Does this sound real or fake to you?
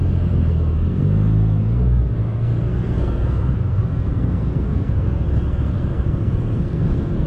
fake